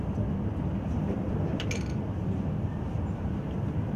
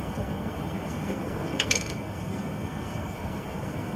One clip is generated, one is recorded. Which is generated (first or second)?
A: second